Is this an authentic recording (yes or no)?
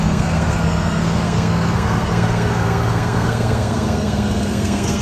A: no